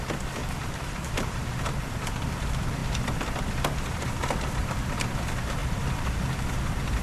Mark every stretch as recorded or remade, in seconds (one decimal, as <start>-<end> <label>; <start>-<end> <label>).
0.0-0.4 recorded; 0.4-1.9 remade; 1.9-5.6 recorded; 5.6-6.2 remade; 6.2-7.0 recorded